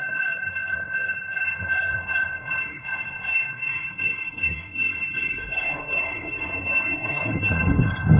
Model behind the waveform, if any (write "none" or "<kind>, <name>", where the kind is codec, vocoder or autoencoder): codec, SNAC